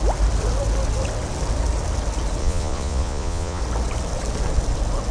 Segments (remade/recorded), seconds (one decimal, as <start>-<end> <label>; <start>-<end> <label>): 0.0-2.4 recorded; 2.4-3.6 remade; 3.6-5.1 recorded